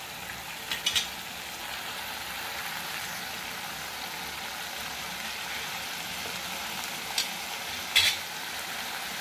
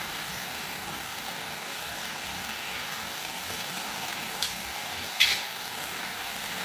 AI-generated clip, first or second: second